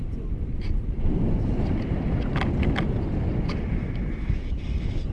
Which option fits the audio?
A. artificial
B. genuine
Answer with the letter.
B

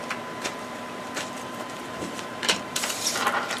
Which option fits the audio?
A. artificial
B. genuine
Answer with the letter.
A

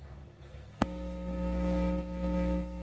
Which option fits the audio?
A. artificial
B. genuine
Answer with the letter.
A